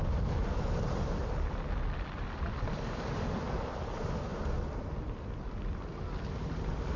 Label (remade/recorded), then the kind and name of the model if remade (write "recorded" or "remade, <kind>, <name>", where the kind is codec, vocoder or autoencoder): recorded